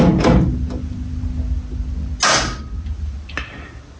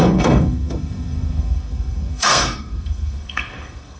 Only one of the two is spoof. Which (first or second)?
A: second